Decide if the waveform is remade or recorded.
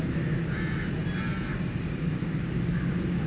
recorded